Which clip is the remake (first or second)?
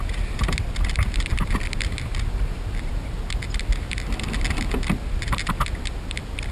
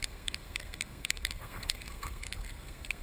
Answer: second